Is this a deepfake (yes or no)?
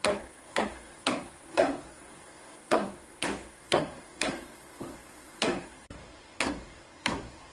yes